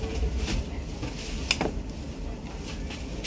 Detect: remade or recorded recorded